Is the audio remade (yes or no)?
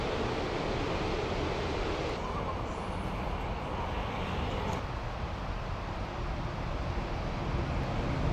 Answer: no